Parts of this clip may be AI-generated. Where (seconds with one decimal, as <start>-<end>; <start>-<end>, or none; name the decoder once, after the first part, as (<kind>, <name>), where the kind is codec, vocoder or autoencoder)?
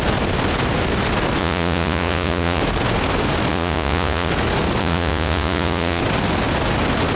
1.4-2.6 (vocoder, Vocos); 3.5-4.3; 4.8-6.0